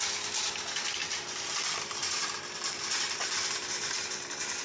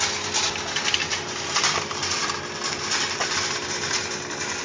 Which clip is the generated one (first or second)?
first